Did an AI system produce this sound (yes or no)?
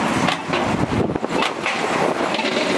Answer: no